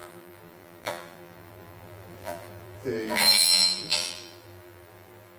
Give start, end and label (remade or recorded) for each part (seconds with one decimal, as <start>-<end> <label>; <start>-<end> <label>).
0.0-5.4 remade